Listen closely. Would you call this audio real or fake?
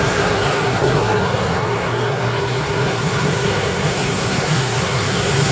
fake